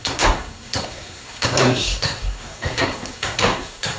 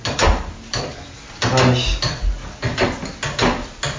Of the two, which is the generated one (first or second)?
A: first